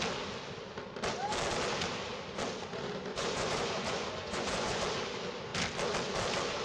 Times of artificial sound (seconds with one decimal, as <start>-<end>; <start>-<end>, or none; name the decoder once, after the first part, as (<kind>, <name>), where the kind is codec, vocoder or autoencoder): 3.1-4.8 (vocoder, Vocos)